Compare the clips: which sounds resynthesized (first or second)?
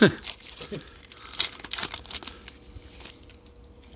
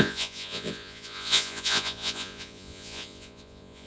second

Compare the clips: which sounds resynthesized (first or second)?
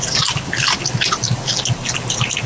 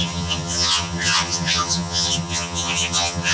second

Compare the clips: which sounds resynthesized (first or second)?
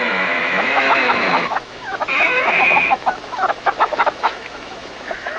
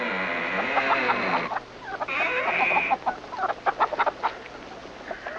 first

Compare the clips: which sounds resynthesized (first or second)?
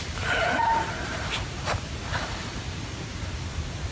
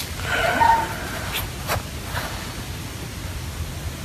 first